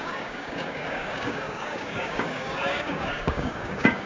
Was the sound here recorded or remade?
remade